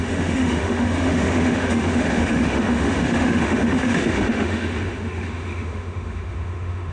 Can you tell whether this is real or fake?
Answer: fake